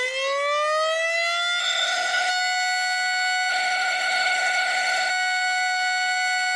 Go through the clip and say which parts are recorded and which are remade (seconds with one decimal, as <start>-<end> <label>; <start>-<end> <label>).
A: 0.0-1.6 recorded; 1.6-2.3 remade; 2.3-3.5 recorded; 3.5-5.1 remade; 5.1-6.6 recorded